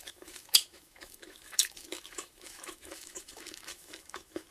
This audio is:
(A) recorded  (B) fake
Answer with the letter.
B